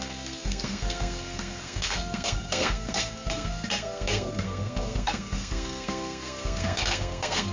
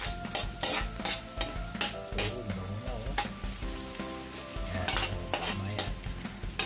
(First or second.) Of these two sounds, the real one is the second